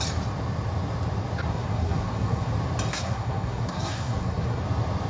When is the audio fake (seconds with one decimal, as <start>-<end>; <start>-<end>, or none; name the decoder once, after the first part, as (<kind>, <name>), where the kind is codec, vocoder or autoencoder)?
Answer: 1.5-2.5 (codec, SNAC); 2.9-4.6